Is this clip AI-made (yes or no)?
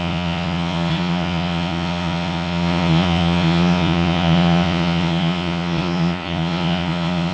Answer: yes